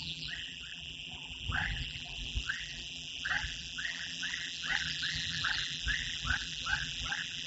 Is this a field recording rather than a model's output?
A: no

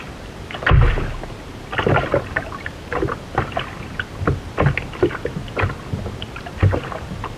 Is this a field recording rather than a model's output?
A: yes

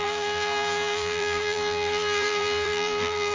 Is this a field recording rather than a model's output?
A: no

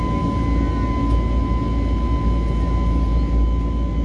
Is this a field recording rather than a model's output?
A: yes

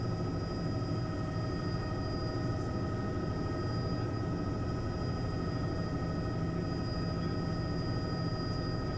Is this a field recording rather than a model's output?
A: yes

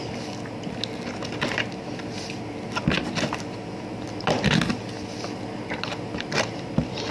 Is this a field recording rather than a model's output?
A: yes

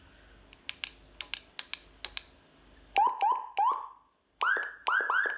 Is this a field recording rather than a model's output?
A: yes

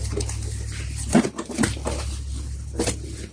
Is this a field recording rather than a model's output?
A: yes